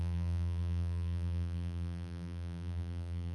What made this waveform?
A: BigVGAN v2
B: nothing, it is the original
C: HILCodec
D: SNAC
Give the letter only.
A